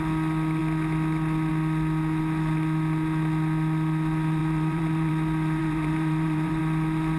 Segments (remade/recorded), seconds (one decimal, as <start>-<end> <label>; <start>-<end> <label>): 0.0-4.4 recorded; 4.4-5.1 remade; 5.1-5.6 recorded; 5.6-6.6 remade; 6.6-7.2 recorded